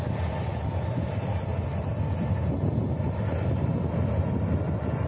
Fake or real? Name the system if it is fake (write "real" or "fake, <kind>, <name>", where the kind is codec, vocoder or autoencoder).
real